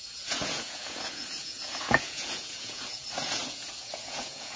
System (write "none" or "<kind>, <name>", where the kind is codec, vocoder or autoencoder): vocoder, Vocos